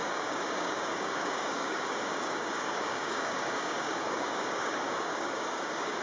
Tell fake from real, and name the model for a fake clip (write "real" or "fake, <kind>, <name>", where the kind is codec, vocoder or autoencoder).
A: fake, codec, DAC